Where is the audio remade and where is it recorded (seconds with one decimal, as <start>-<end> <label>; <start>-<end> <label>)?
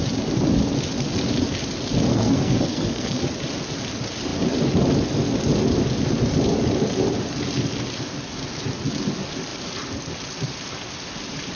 0.0-2.1 recorded; 2.1-3.2 remade; 3.2-11.6 recorded